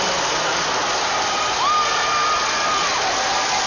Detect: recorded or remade recorded